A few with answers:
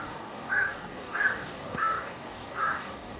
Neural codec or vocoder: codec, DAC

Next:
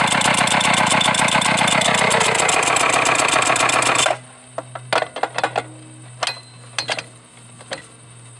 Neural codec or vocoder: none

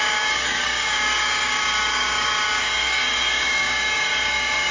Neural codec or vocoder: codec, DAC